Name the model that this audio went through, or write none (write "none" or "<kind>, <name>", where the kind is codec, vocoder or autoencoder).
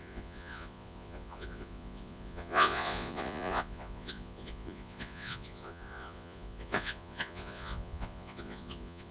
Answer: vocoder, Vocos